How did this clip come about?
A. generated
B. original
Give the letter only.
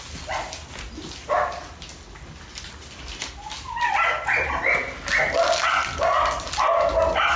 B